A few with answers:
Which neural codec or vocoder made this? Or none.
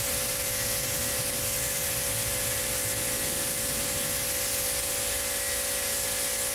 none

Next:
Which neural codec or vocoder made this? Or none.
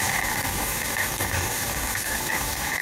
codec, DAC